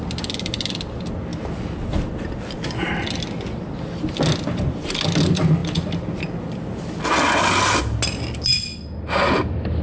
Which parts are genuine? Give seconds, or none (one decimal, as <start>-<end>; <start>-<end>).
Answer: 0.0-9.8